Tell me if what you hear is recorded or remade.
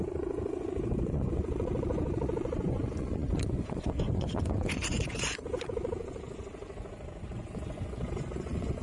remade